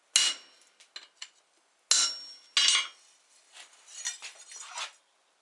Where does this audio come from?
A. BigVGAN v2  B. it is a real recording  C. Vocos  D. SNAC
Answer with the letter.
B